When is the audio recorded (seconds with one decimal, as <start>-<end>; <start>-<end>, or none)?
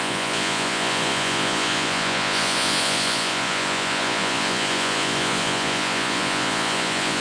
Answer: none